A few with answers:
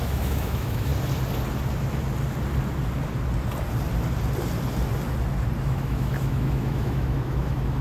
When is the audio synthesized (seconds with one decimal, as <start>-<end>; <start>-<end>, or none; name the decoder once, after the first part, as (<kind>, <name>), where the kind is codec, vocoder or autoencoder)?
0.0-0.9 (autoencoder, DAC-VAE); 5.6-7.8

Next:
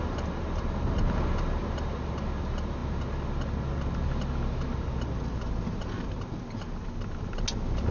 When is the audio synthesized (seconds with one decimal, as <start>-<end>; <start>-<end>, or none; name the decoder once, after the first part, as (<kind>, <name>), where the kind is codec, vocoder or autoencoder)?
none

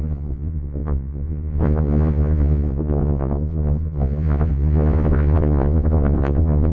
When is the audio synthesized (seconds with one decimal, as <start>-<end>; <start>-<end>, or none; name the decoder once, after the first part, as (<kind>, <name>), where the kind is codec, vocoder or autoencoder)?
0.0-6.7 (vocoder, Vocos)

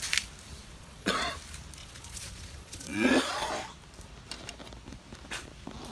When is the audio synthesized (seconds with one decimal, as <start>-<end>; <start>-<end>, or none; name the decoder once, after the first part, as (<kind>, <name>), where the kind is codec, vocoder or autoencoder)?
0.6-1.3 (vocoder, Vocos); 1.8-3.5